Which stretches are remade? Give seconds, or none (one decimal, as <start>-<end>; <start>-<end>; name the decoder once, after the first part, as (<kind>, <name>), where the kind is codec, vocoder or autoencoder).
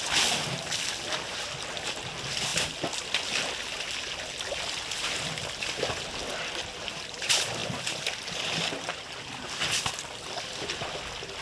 none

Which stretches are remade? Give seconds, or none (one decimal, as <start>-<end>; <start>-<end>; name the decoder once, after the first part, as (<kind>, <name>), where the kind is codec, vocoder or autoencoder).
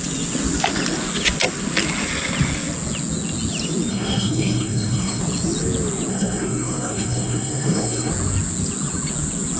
3.9-5.2 (codec, SNAC); 6.1-8.1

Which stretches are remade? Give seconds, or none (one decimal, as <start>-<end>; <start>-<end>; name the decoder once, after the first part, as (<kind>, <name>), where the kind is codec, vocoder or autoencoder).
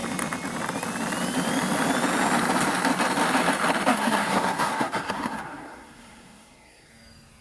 3.9-6.9 (codec, SNAC)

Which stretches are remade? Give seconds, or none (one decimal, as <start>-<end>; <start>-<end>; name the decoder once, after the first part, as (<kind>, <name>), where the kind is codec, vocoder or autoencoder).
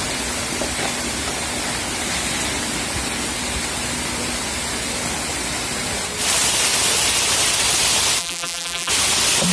8.2-8.9 (vocoder, BigVGAN v2)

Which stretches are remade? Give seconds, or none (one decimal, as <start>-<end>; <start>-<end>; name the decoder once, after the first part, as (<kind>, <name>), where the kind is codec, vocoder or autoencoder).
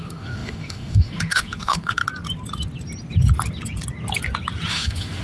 0.0-2.0 (autoencoder, DAC-VAE); 4.7-5.2